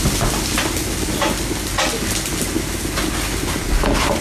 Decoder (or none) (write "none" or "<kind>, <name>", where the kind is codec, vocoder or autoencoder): none